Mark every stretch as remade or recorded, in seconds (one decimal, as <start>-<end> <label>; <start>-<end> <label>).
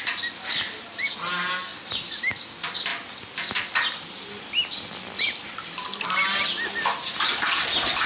0.0-8.1 recorded